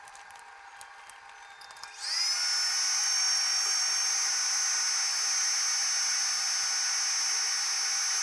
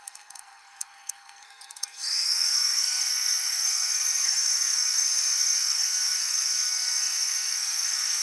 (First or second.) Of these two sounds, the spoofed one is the second